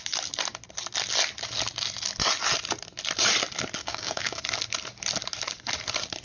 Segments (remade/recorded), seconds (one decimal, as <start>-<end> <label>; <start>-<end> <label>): 0.0-3.8 recorded; 3.8-4.4 remade; 4.4-6.2 recorded